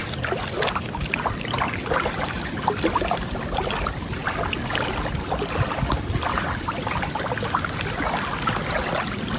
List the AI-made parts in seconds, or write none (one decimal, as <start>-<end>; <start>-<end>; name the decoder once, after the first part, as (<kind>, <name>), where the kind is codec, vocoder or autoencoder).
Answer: none

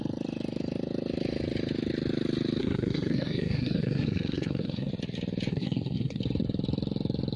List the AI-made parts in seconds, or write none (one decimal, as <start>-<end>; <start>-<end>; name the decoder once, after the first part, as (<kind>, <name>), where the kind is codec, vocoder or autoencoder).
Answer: 2.6-4.9 (codec, SNAC); 5.5-6.2

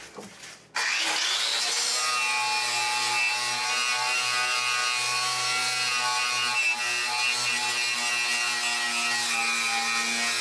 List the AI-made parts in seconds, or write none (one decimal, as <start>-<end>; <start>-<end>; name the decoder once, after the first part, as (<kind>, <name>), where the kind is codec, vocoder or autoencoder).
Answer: none